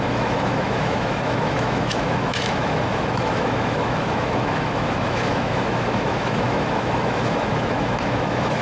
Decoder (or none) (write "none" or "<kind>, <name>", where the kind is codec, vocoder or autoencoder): autoencoder, DAC-VAE